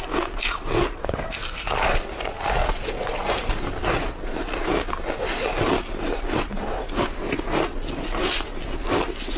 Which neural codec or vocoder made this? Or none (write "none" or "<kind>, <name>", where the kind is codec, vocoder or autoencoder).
none